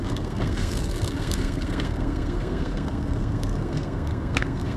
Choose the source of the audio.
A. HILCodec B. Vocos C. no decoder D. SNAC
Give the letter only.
D